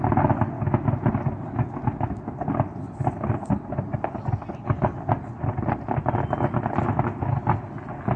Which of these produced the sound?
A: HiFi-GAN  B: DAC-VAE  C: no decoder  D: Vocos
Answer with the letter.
C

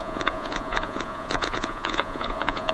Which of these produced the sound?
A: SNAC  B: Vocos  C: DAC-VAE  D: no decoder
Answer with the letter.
B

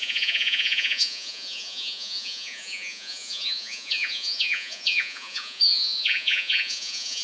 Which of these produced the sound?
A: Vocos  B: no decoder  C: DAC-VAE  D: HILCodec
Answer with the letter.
A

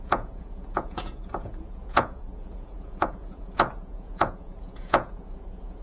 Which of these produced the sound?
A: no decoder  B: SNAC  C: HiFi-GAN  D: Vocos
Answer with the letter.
D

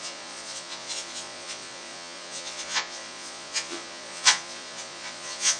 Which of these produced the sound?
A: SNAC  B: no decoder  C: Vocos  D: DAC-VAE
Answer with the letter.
C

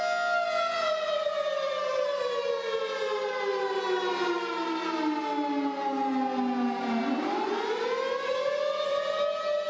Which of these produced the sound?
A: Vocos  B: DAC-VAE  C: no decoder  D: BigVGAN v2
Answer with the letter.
C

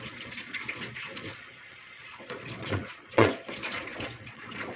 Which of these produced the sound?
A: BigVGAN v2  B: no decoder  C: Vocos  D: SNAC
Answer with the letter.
C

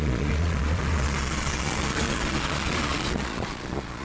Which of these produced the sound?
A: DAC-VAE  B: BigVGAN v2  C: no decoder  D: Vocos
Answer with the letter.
D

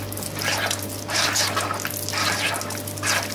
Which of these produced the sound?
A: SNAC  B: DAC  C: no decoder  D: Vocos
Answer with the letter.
C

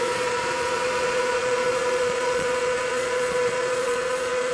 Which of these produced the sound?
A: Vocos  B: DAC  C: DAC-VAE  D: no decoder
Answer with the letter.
A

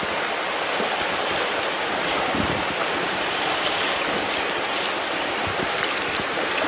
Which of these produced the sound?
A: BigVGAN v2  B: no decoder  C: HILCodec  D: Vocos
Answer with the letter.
B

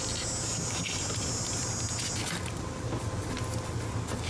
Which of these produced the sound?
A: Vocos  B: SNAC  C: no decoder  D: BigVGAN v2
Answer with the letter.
C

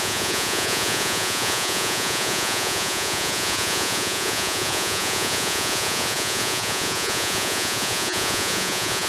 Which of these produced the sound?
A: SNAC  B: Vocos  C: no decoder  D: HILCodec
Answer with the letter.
B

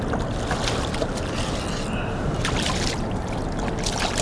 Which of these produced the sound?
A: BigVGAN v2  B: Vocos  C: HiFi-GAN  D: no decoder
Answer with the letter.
D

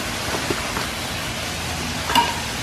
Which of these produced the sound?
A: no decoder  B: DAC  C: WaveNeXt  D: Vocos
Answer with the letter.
A